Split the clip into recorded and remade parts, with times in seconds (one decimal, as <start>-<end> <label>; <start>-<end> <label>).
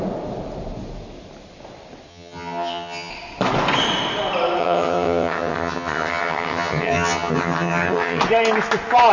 0.0-2.1 recorded; 2.1-3.1 remade; 3.1-4.6 recorded; 4.6-8.2 remade; 8.2-9.1 recorded